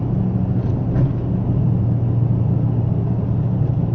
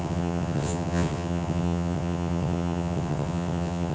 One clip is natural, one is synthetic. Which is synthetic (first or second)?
second